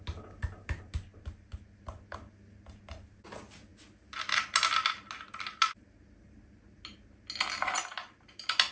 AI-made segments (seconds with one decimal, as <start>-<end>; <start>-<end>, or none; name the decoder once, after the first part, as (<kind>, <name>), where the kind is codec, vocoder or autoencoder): none